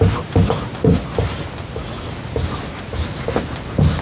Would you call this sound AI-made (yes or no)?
no